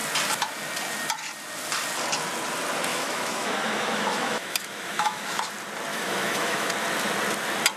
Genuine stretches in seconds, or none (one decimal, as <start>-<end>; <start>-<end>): 0.0-2.9; 5.4-5.9; 6.7-7.8